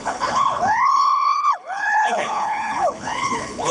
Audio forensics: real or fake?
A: fake